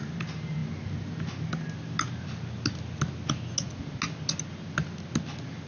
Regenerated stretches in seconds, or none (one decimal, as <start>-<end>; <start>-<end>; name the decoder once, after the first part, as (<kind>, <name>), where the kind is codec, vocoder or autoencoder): none